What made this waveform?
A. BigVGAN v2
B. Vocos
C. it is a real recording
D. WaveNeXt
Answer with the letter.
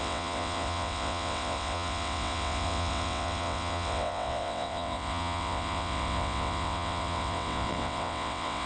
D